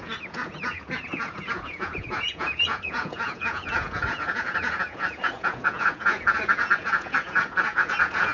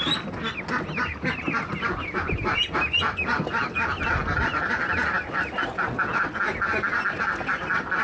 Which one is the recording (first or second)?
second